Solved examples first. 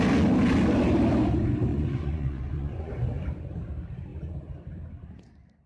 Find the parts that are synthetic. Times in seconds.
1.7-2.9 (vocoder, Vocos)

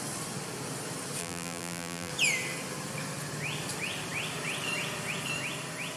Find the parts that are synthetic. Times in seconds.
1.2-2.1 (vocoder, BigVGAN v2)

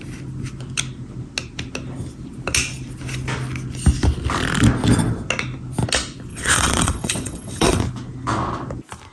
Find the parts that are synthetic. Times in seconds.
6.3-7.8 (vocoder, WaveNeXt)